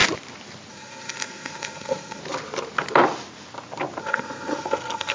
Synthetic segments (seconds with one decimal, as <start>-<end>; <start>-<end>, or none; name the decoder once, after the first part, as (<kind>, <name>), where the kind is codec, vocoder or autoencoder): 0.7-2.2 (codec, SNAC); 4.0-5.1